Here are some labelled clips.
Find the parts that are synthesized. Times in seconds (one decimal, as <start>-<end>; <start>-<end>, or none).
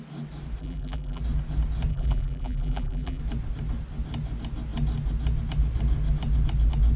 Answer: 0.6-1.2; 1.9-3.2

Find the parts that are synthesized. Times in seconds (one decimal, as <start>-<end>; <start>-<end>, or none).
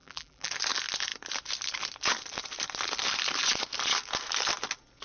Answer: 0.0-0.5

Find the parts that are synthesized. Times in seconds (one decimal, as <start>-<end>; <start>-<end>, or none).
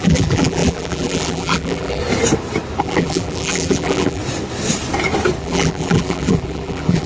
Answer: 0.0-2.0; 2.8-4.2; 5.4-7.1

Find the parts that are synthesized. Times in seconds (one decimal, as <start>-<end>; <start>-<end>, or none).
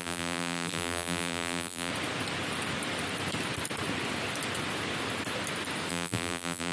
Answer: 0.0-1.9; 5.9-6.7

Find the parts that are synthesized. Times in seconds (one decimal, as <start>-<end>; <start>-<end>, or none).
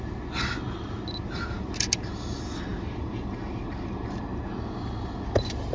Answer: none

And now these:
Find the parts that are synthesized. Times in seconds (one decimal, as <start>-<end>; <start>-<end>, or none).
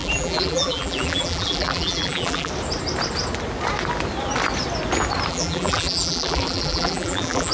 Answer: 0.0-2.5; 5.3-7.5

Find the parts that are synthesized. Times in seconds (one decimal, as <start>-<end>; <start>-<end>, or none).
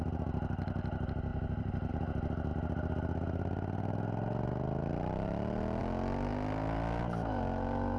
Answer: 1.3-1.9